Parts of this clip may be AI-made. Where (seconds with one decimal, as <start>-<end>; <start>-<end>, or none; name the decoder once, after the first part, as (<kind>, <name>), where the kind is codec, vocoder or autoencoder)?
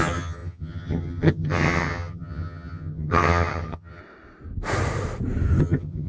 0.0-4.0 (vocoder, HiFi-GAN); 5.6-6.1